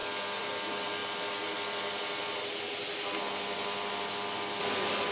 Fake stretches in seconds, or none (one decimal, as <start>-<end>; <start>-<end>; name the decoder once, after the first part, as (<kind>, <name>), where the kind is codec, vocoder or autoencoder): none